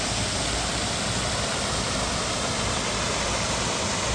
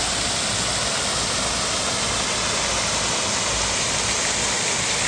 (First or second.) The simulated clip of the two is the first